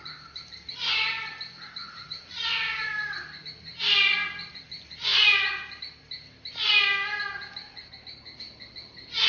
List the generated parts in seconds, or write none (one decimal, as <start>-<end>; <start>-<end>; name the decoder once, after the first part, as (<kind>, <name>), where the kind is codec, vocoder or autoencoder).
1.8-2.9 (vocoder, Vocos)